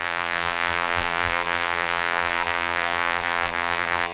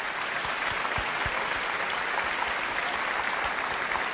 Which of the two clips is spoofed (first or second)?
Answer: first